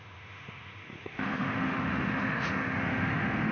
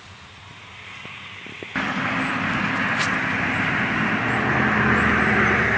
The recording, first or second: second